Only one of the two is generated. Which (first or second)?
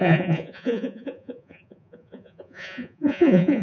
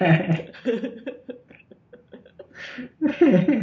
first